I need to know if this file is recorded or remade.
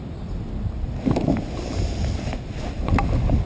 recorded